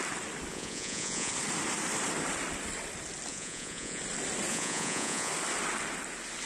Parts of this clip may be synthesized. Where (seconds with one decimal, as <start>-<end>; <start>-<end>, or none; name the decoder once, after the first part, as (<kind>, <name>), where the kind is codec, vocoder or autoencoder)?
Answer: 0.5-1.3 (vocoder, Vocos); 3.3-4.0; 4.5-5.3